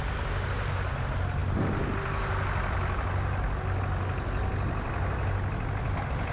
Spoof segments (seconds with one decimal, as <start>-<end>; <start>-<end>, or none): none